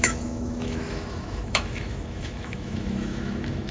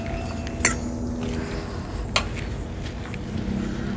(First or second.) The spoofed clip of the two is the first